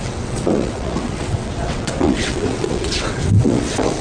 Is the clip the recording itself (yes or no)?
no